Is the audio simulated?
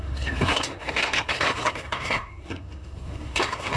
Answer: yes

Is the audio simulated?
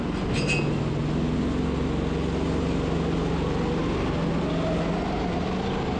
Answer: no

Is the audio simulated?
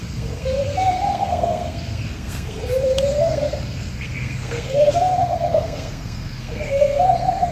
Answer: yes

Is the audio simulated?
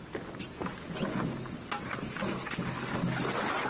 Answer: no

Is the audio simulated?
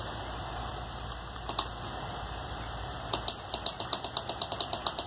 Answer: no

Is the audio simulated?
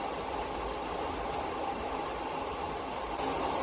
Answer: no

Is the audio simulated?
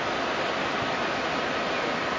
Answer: no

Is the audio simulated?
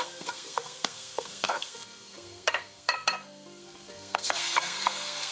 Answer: yes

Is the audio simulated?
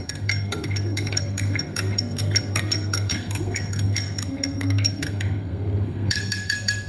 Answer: yes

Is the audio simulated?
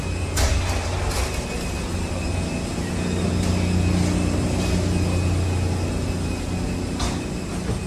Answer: no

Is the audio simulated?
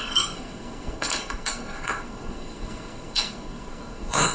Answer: yes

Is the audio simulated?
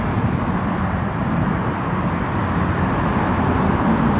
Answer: no